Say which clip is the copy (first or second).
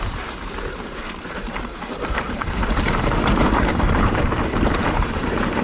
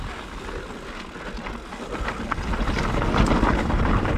first